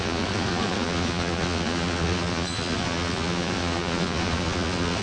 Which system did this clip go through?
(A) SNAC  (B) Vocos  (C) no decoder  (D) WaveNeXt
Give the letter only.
B